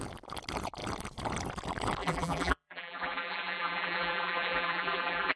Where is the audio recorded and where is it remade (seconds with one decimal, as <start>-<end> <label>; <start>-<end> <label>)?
0.0-2.0 recorded; 2.0-5.4 remade